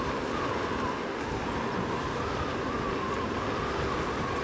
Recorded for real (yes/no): yes